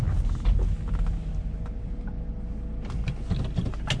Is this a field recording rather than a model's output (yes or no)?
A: yes